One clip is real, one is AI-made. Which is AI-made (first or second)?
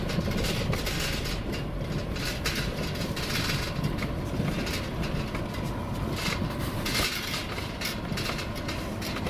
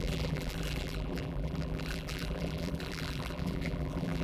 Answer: second